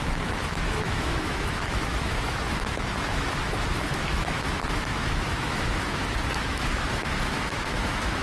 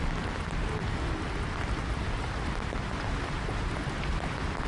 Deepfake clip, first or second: first